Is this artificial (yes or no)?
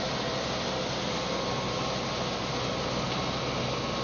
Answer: no